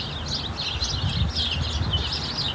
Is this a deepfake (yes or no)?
no